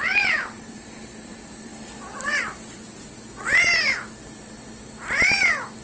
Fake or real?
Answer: real